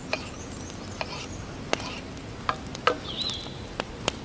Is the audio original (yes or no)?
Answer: yes